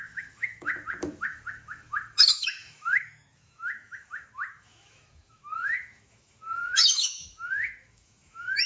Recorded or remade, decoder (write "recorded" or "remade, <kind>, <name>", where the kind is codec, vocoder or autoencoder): remade, autoencoder, DAC-VAE